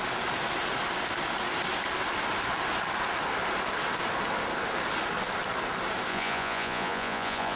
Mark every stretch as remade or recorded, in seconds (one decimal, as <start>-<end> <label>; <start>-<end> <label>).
0.0-6.1 recorded; 6.1-7.6 remade